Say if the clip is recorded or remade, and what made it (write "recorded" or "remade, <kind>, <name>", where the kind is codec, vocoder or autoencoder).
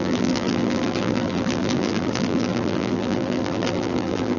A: remade, vocoder, BigVGAN v2